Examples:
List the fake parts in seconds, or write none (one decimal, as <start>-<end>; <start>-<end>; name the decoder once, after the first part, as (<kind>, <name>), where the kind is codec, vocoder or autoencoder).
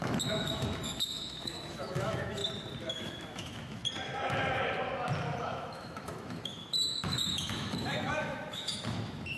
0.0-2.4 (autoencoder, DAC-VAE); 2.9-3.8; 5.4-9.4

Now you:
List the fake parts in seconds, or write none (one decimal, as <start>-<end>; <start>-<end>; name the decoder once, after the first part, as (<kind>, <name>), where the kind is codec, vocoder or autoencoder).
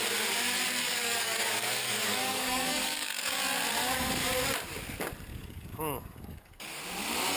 0.8-3.4 (codec, DAC); 5.3-6.8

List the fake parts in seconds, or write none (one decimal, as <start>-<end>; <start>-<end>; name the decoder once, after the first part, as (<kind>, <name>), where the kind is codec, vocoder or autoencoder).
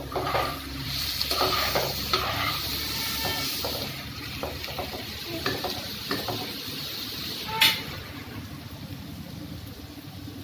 0.0-3.3 (vocoder, BigVGAN v2); 3.9-10.4